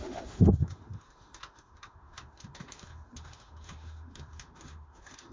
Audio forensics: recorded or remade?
remade